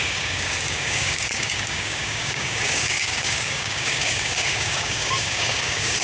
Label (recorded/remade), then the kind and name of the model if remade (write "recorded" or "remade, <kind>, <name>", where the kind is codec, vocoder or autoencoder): remade, codec, DAC